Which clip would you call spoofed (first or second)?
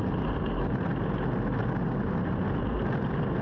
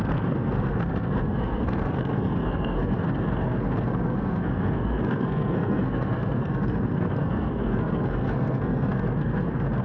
second